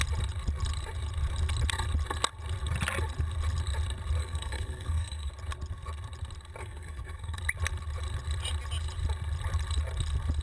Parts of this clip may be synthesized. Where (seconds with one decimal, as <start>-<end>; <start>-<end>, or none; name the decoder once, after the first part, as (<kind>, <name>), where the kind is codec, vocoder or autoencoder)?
4.2-5.3 (codec, SNAC); 6.6-7.4